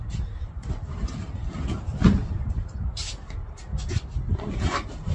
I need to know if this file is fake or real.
real